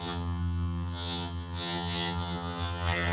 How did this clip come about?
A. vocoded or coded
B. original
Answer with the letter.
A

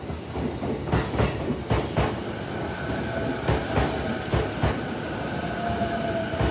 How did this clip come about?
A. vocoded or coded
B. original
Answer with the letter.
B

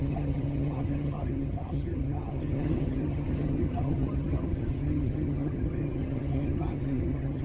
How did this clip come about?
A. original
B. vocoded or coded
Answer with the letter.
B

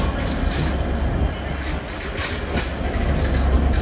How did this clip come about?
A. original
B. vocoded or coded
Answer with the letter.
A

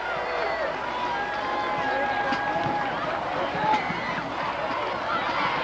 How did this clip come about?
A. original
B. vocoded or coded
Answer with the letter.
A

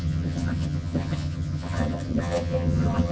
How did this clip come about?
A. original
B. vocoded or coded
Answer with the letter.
B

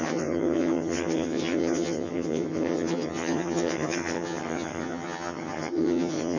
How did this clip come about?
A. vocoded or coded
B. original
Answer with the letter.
A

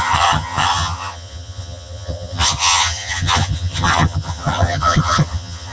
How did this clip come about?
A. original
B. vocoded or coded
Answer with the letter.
B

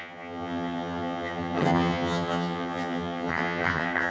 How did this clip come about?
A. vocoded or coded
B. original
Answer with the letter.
A